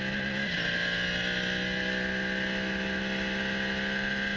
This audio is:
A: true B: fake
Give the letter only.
A